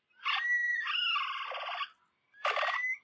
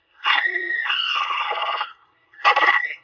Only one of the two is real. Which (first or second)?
first